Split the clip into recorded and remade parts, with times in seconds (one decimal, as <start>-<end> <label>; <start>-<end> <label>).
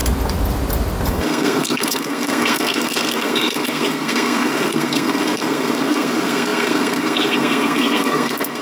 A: 0.0-1.1 recorded; 1.1-8.6 remade